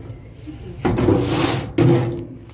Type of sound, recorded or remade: recorded